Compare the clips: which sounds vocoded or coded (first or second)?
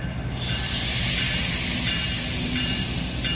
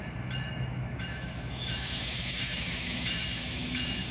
second